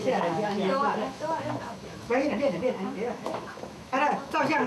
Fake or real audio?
fake